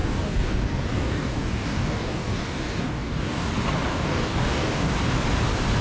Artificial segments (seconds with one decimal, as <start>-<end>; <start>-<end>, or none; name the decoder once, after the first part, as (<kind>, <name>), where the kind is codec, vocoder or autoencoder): 0.0-3.5 (codec, DAC); 3.9-4.9